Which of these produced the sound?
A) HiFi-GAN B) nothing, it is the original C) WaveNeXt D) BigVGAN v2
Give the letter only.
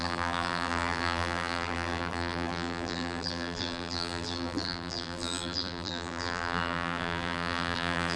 D